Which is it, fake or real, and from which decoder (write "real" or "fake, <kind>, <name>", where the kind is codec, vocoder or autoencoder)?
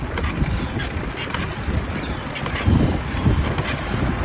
real